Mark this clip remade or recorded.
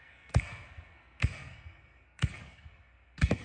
remade